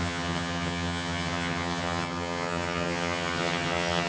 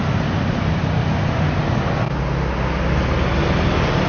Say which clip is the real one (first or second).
second